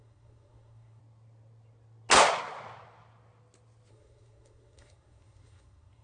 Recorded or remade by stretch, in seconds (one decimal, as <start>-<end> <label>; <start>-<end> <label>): 0.0-1.0 remade; 1.0-3.9 recorded; 3.9-6.0 remade